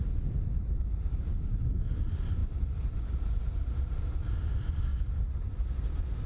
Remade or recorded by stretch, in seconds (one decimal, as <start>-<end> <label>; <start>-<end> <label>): 0.0-4.9 recorded; 4.9-5.5 remade; 5.5-6.3 recorded